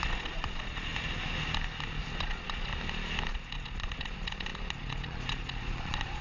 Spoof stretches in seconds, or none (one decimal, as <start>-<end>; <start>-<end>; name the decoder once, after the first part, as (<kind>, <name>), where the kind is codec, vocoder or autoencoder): 0.0-0.9 (vocoder, Vocos); 2.0-2.7; 3.3-6.2